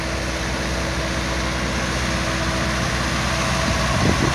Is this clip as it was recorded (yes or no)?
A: yes